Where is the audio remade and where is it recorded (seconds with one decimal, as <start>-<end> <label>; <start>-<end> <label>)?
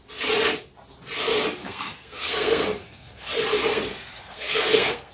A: 0.0-1.6 recorded; 1.6-3.3 remade; 3.3-3.7 recorded; 3.7-5.1 remade